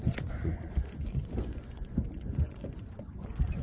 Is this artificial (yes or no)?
yes